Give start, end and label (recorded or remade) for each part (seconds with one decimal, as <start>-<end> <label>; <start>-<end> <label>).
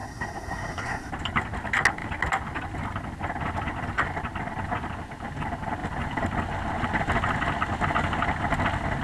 0.0-1.1 remade; 1.1-9.0 recorded